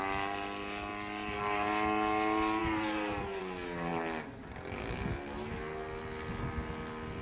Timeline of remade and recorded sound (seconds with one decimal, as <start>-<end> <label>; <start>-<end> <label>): 0.0-2.6 recorded; 2.6-3.4 remade; 3.4-7.2 recorded